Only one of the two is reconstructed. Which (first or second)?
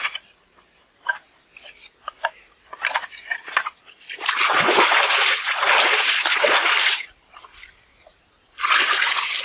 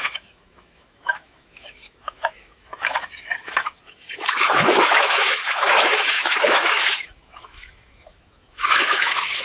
second